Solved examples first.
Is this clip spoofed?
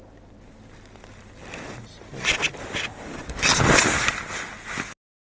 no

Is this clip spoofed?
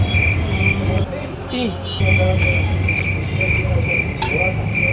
no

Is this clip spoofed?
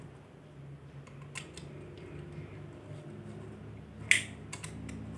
no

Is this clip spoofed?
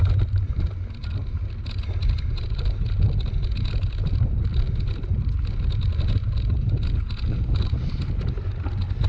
no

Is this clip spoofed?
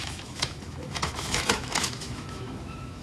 yes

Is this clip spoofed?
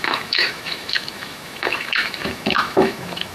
yes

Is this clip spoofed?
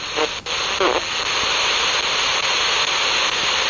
no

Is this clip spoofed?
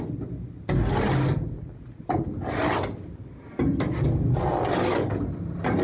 no